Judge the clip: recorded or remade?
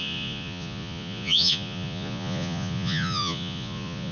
remade